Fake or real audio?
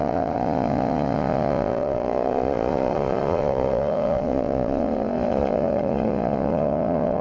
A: fake